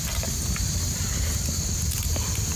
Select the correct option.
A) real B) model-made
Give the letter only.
A